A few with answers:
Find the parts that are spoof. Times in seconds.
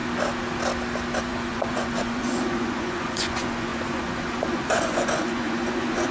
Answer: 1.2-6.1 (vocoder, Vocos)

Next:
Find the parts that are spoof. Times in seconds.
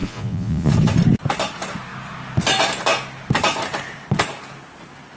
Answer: 0.0-0.7 (vocoder, Vocos)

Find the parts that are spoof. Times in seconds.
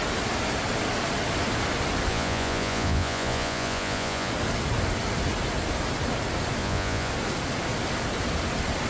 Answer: 2.1-4.3 (vocoder, Vocos); 6.6-7.1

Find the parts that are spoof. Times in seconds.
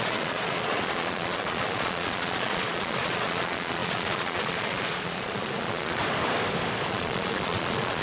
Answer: 0.0-6.0 (vocoder, Vocos); 6.9-8.0